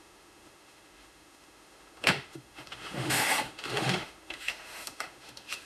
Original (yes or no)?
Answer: no